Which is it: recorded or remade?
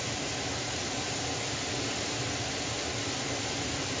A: recorded